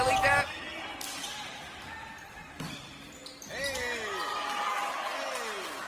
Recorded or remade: recorded